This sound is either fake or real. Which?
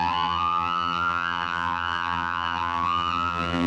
fake